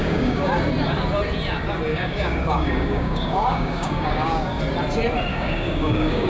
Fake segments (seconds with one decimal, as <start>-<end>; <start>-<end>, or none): 0.0-0.6; 1.9-4.6; 5.3-6.3